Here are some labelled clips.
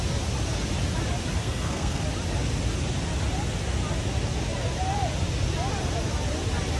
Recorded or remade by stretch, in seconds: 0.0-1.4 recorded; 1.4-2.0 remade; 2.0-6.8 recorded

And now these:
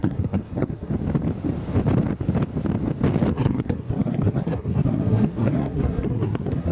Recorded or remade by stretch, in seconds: 0.0-0.9 remade; 0.9-3.3 recorded; 3.3-6.7 remade

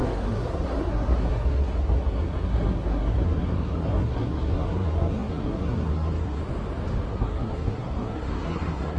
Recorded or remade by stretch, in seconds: 0.0-6.4 remade; 6.4-7.1 recorded; 7.1-9.0 remade

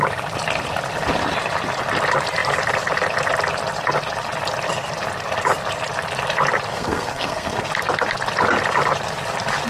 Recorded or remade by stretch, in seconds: 0.0-6.7 recorded; 6.7-7.7 remade; 7.7-9.7 recorded

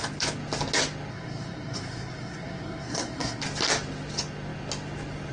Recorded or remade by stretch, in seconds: 0.0-1.1 recorded; 1.1-3.4 remade; 3.4-5.3 recorded

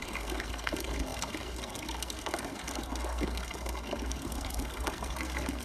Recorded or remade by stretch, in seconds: 0.0-5.6 remade